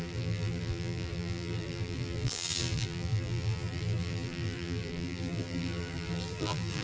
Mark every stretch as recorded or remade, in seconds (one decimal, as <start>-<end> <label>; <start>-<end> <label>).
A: 0.0-6.8 remade